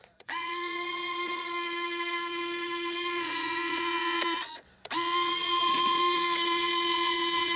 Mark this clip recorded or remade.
remade